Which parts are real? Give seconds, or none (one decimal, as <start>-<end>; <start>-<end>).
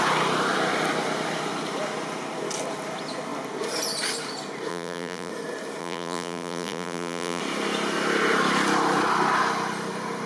0.0-4.7; 5.3-5.8; 7.4-10.3